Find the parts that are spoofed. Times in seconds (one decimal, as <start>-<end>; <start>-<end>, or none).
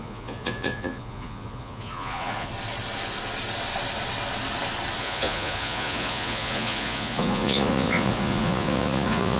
0.0-2.5; 5.0-9.4